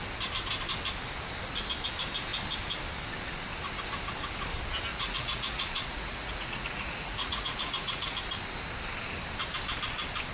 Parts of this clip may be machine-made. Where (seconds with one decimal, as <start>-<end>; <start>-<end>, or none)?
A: 4.9-8.2